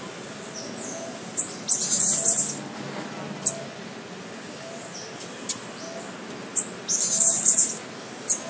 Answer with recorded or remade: recorded